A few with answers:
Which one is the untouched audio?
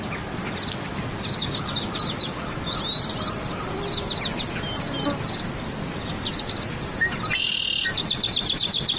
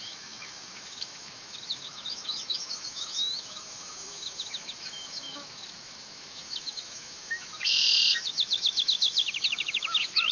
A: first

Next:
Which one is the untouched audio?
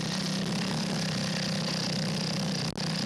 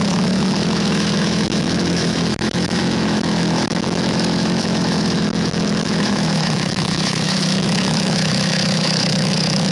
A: first